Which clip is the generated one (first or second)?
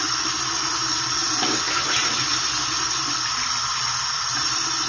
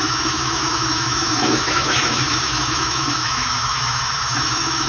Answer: second